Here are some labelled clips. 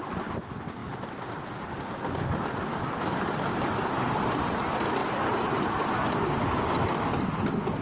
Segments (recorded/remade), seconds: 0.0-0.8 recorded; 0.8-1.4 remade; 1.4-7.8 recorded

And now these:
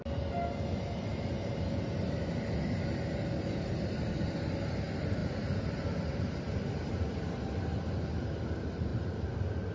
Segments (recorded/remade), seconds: 0.0-1.3 recorded; 1.3-2.4 remade; 2.4-5.2 recorded; 5.2-8.2 remade; 8.2-8.9 recorded; 8.9-9.7 remade

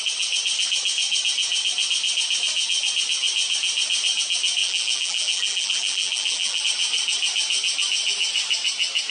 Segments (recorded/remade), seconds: 0.0-4.6 recorded; 4.6-6.6 remade; 6.6-9.1 recorded

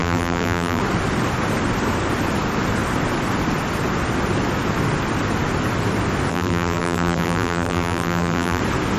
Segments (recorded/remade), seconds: 0.0-0.8 remade; 0.8-6.3 recorded; 6.3-8.6 remade; 8.6-9.0 recorded

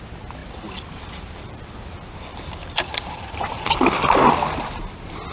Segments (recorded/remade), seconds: 0.0-0.4 recorded; 0.4-1.6 remade; 1.6-2.3 recorded; 2.3-3.4 remade; 3.4-5.3 recorded

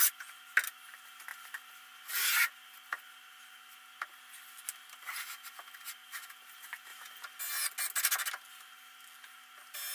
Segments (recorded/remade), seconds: 0.0-9.9 recorded